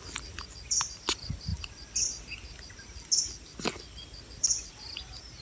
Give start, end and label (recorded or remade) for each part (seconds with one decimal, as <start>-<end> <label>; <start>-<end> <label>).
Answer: 0.0-5.4 recorded